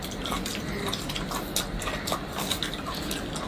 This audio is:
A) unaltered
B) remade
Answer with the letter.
A